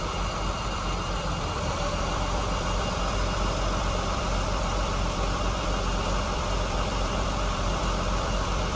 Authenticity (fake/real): fake